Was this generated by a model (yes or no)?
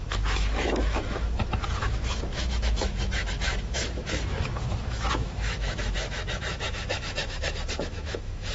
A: yes